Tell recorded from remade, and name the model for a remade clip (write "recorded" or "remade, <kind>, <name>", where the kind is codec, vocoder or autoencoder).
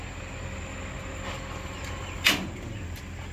recorded